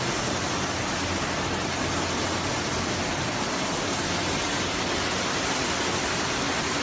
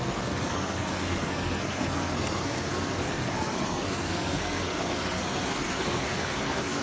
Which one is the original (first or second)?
first